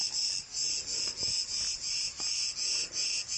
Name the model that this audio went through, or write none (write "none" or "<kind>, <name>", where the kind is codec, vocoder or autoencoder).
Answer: none